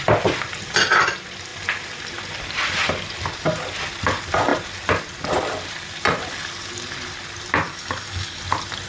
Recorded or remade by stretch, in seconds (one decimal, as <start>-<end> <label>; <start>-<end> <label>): 0.0-7.7 recorded; 7.7-8.4 remade; 8.4-8.9 recorded